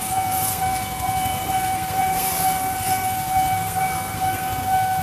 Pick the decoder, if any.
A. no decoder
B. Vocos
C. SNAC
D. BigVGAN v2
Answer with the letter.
C